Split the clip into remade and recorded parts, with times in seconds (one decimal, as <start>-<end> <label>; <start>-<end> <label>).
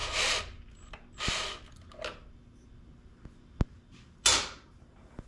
0.0-5.3 recorded